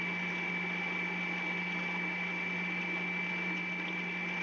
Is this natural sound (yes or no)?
yes